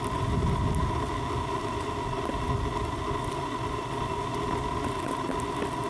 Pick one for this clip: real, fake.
real